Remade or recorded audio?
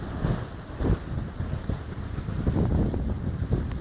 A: recorded